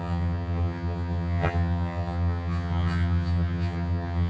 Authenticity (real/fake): fake